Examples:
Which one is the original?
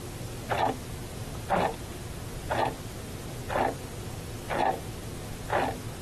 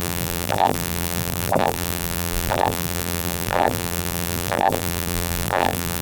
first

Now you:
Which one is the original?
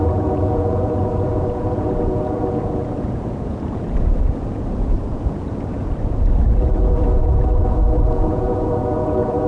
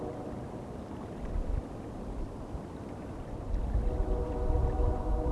second